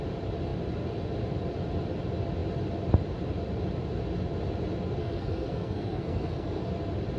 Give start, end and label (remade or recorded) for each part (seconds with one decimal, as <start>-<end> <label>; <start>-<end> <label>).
0.0-5.0 recorded; 5.0-6.7 remade; 6.7-7.2 recorded